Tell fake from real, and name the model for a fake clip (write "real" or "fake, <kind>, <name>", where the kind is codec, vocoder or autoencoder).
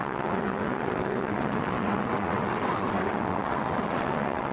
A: fake, vocoder, WaveNeXt